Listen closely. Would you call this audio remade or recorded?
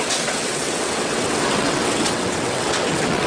remade